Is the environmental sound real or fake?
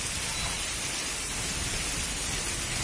real